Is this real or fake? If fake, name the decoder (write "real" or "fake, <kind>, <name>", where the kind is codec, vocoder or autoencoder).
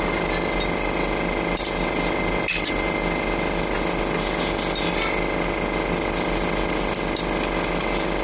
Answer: real